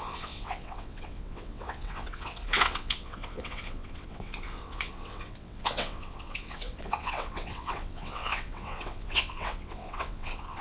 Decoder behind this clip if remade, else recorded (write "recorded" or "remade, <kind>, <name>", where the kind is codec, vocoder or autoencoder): remade, vocoder, WaveNeXt